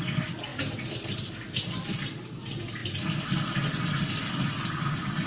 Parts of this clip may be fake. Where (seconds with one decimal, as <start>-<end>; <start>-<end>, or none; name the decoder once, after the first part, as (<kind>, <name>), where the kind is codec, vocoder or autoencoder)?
none